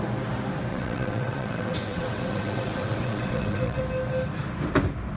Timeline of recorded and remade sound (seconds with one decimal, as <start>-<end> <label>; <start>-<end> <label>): 0.0-0.7 recorded; 0.7-3.8 remade; 3.8-5.2 recorded